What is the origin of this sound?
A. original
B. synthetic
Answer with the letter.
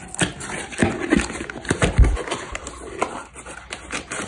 A